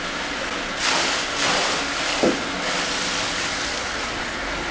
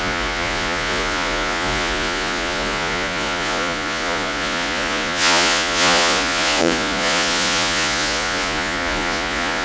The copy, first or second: second